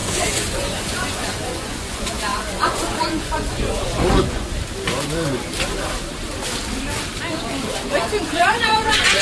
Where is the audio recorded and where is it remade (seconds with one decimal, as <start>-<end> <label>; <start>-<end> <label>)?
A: 0.0-4.5 remade; 4.5-8.2 recorded; 8.2-9.2 remade